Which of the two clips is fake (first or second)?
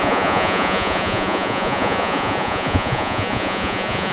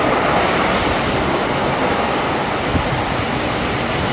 first